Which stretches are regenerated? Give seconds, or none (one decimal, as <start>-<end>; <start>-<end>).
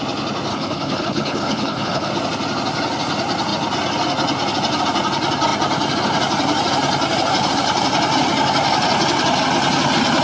0.5-2.1